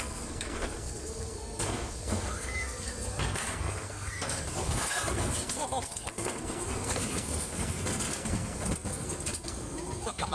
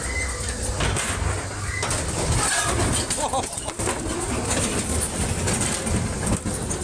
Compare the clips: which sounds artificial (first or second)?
first